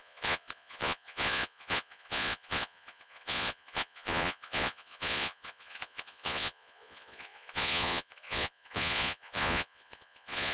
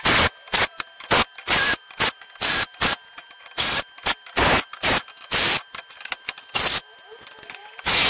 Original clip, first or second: second